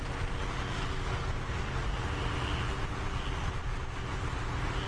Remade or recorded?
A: recorded